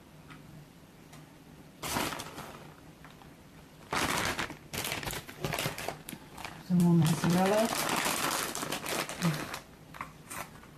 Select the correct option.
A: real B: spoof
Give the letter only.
B